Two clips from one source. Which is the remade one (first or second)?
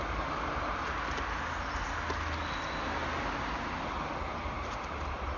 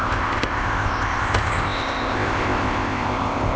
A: second